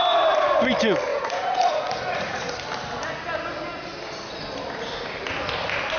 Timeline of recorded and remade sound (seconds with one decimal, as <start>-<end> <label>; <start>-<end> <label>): 0.0-1.1 recorded; 1.1-2.6 remade; 2.6-6.0 recorded